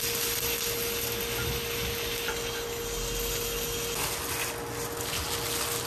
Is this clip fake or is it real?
real